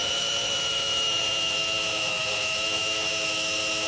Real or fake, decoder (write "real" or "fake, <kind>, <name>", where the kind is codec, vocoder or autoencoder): fake, autoencoder, DAC-VAE